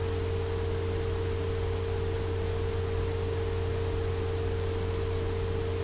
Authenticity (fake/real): real